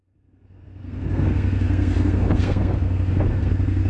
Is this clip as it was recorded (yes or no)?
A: no